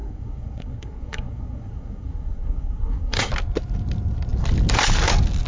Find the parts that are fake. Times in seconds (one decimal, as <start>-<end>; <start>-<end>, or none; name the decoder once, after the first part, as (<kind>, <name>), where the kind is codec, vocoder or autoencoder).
0.0-3.3 (codec, SNAC)